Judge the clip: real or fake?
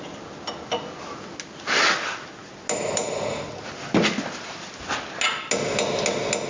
real